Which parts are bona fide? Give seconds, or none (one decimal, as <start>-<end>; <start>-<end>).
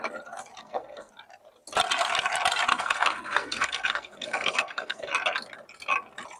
0.0-0.6; 1.1-2.7; 5.1-6.4